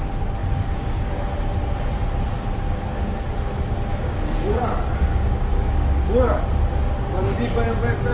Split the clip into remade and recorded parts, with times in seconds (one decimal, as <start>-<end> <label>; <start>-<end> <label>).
0.0-0.4 recorded; 0.4-1.1 remade; 1.1-3.9 recorded; 3.9-4.6 remade; 4.6-5.1 recorded; 5.1-6.4 remade; 6.4-8.1 recorded